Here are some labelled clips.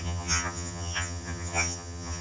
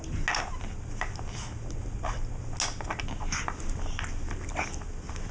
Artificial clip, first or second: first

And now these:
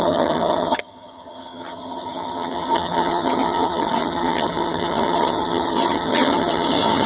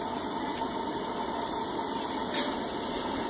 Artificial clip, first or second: first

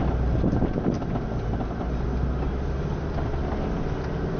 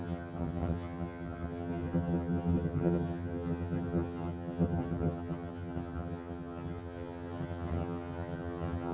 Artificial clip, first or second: second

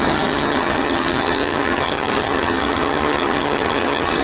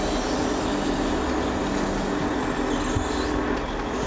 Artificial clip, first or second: first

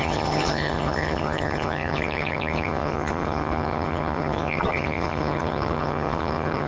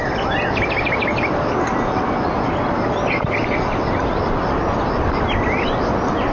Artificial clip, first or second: first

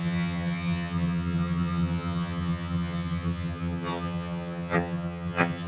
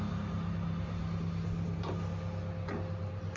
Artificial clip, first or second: first